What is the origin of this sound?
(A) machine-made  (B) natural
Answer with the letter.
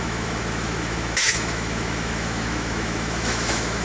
A